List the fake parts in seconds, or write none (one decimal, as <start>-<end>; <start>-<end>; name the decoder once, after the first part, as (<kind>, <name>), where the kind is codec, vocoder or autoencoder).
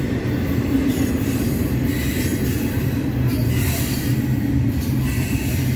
0.0-5.8 (vocoder, BigVGAN v2)